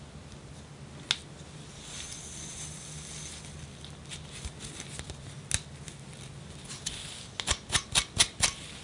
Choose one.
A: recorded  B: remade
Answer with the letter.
A